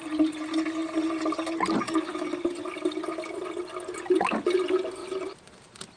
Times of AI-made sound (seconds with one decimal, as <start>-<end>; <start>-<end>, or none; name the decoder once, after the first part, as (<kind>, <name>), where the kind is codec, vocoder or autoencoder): none

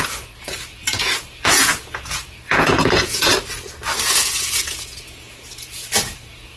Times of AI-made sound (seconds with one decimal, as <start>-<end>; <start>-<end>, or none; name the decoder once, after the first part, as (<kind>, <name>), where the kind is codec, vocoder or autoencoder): 0.0-3.3 (vocoder, Vocos); 4.0-6.6

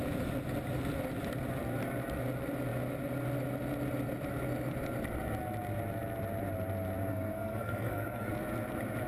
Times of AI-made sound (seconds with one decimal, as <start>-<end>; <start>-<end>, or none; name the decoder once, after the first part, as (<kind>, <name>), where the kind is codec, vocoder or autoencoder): 7.1-8.3 (codec, SNAC)

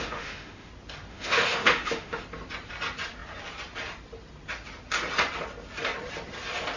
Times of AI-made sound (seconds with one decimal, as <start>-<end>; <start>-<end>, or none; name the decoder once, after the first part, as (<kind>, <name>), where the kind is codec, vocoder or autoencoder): 0.0-0.7 (autoencoder, DAC-VAE); 1.1-2.2